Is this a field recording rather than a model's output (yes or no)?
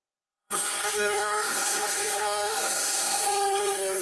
no